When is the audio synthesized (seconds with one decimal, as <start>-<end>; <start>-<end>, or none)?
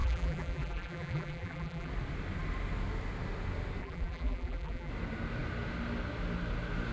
0.0-1.9; 3.8-4.9